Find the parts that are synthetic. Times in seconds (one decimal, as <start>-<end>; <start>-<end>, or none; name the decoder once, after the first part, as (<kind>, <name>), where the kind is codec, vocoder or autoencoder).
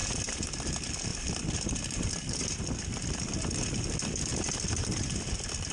1.1-3.8 (vocoder, BigVGAN v2); 4.3-4.8